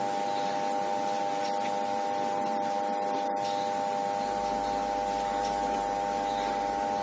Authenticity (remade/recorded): recorded